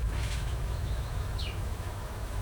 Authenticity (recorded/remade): remade